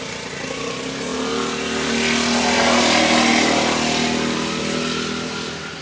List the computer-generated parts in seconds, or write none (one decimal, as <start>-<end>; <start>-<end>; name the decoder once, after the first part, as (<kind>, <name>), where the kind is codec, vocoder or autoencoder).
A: none